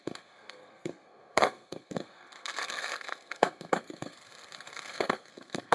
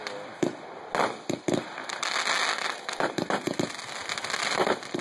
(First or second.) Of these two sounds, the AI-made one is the first